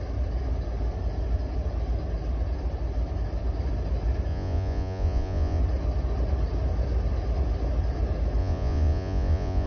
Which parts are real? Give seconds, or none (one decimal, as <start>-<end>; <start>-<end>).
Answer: 0.0-4.3; 5.6-8.4